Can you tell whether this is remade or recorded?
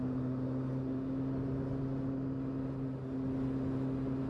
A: recorded